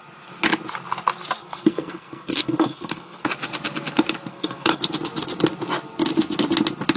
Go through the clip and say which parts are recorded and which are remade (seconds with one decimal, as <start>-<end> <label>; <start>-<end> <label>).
0.0-1.4 recorded; 1.4-3.3 remade; 3.3-4.3 recorded; 4.3-4.8 remade; 4.8-7.0 recorded